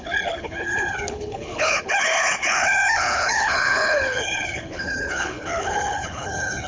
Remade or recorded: remade